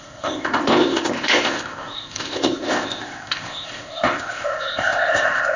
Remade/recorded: remade